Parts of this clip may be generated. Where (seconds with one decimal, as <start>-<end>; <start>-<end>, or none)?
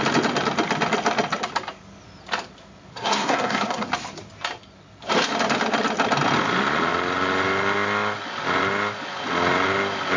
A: 2.9-3.9